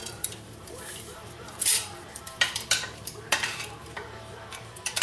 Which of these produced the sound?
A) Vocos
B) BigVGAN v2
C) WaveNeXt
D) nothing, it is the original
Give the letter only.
B